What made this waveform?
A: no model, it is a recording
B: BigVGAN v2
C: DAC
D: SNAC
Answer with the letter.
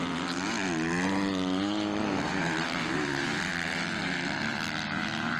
A